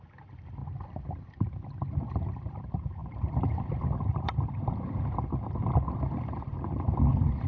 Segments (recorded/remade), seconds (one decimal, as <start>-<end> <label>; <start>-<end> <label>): 0.0-0.6 remade; 0.6-2.0 recorded; 2.0-7.5 remade